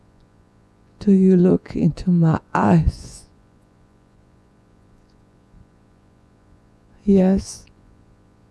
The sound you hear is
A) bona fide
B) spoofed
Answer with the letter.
B